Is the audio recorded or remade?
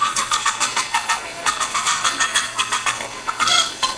remade